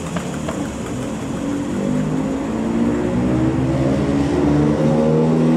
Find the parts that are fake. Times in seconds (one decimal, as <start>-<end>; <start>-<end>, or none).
none